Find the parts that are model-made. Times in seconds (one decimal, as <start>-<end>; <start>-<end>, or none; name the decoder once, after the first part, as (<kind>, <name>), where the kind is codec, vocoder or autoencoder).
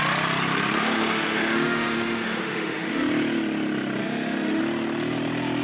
0.8-3.1 (autoencoder, DAC-VAE); 4.0-4.6